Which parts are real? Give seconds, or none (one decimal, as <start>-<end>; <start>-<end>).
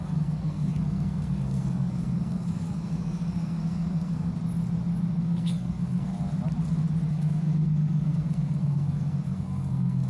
4.3-5.2; 6.1-7.1